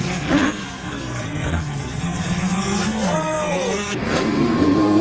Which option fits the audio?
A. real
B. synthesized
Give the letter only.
B